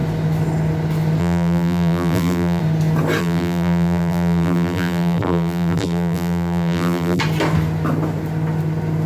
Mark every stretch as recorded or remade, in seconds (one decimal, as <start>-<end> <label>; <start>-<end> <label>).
0.0-1.2 recorded; 1.2-2.6 remade; 2.6-3.2 recorded; 3.2-7.2 remade; 7.2-9.1 recorded